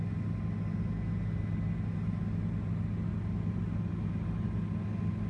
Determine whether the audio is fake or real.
real